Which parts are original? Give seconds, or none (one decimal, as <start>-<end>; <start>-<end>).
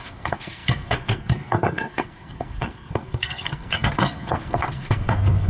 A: none